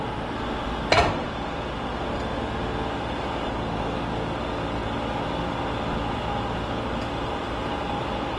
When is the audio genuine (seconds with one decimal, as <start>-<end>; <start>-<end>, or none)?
0.0-8.4